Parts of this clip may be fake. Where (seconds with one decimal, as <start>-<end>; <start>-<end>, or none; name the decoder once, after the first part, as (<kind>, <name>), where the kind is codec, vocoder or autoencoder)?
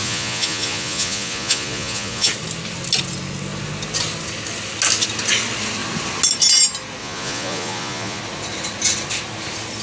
0.0-2.3 (vocoder, Vocos); 7.0-8.2